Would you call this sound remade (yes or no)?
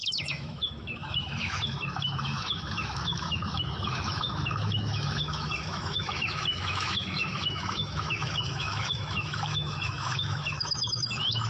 yes